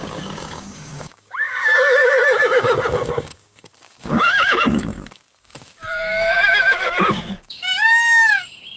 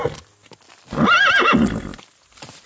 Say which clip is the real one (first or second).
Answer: second